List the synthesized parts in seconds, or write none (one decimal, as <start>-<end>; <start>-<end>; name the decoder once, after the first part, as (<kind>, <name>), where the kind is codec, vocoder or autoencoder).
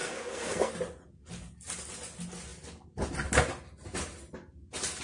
0.0-0.7 (codec, SNAC)